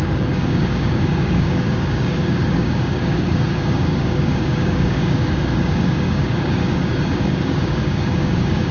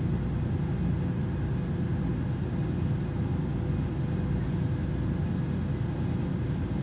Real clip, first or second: second